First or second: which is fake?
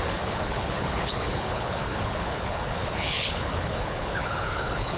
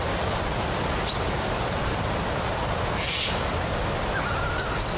first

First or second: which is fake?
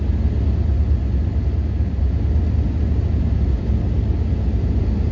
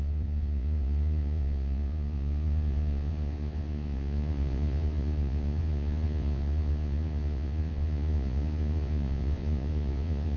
second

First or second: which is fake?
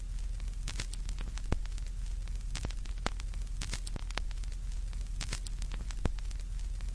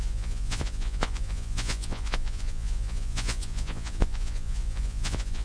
second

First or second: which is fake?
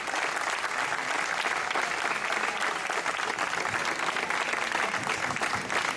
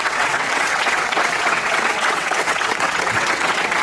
second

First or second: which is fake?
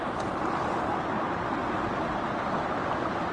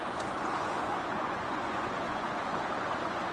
second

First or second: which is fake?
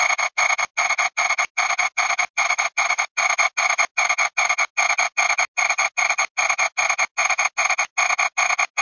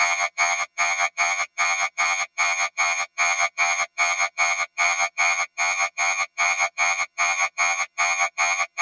second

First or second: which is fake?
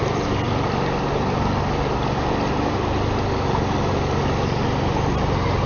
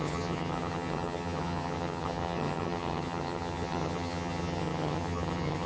second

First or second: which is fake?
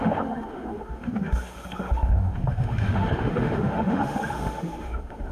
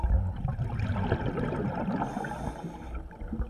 first